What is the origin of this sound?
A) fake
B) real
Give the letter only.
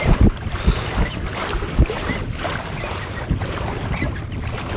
B